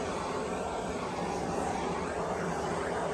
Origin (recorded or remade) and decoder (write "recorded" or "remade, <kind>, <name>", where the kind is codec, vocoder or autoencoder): remade, vocoder, BigVGAN v2